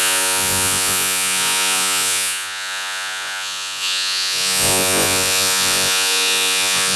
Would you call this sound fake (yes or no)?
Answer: yes